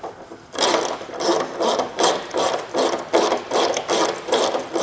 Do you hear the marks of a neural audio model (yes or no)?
yes